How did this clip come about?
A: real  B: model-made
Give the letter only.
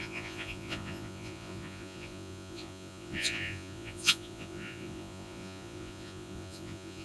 B